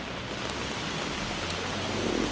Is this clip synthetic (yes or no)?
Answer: no